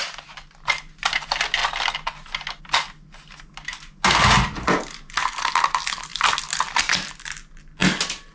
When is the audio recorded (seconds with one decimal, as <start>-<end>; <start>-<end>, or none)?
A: 0.0-8.3